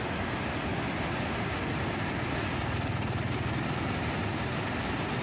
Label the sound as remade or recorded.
recorded